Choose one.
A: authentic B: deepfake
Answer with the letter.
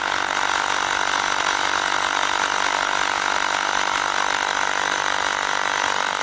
A